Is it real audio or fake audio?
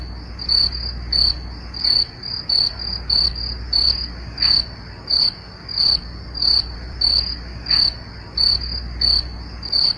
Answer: real